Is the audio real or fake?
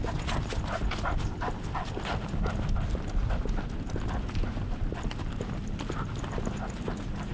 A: real